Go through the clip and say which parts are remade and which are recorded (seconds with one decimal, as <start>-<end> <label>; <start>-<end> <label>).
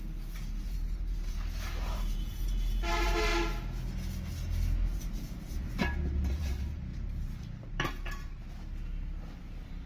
0.0-3.3 remade; 3.3-6.3 recorded; 6.3-8.4 remade; 8.4-9.4 recorded; 9.4-9.9 remade